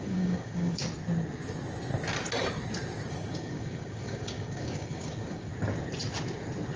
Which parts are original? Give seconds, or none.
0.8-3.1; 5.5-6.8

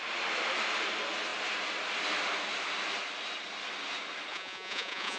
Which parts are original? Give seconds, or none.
0.0-4.3

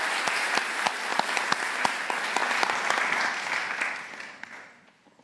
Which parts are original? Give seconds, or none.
0.0-5.2

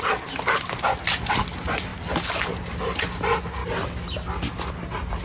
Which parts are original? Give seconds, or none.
0.0-5.2